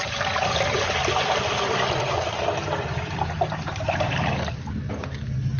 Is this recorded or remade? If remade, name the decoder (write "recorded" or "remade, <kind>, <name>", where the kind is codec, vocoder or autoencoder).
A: recorded